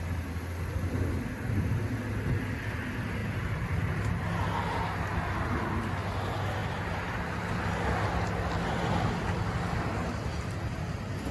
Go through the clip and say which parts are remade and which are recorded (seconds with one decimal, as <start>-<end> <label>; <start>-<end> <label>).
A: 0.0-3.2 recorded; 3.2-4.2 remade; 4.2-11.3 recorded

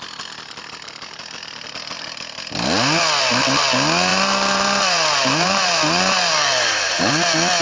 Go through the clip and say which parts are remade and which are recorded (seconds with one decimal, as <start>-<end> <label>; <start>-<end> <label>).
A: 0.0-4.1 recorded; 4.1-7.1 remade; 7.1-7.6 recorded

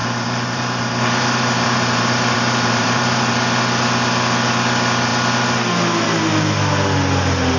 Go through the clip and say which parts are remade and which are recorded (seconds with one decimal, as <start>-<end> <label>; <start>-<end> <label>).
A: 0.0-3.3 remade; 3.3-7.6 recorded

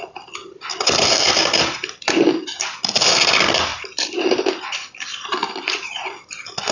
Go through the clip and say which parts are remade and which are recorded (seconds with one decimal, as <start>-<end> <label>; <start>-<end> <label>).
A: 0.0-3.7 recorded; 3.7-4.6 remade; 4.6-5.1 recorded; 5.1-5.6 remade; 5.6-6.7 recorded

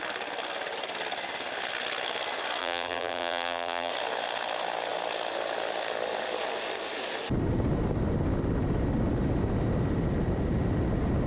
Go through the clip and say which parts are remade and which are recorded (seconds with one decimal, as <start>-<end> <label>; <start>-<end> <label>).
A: 0.0-2.6 recorded; 2.6-3.9 remade; 3.9-11.3 recorded

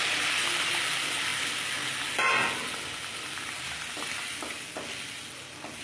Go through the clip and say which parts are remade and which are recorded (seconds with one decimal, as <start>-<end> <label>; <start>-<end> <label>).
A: 0.0-5.8 recorded